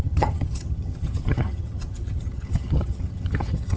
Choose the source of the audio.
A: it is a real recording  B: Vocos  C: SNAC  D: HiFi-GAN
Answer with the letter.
D